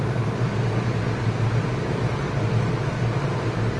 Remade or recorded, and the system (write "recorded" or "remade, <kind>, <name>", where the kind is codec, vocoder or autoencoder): recorded